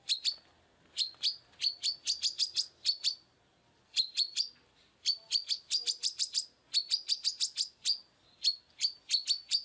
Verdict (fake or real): real